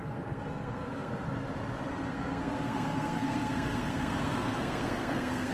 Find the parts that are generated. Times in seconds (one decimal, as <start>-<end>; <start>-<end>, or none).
0.0-1.2; 2.1-5.5